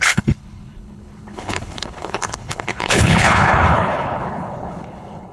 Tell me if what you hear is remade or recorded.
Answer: remade